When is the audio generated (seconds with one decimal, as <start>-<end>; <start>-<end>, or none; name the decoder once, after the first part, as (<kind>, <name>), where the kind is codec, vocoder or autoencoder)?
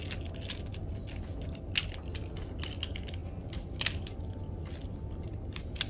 3.2-4.4 (vocoder, BigVGAN v2)